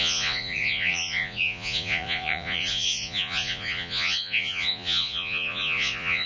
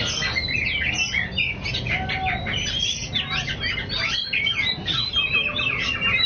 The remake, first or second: first